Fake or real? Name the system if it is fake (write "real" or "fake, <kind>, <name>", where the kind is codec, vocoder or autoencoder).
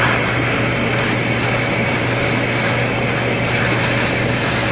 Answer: real